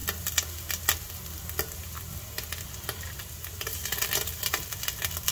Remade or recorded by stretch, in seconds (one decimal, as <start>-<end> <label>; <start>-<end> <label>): 0.0-5.3 recorded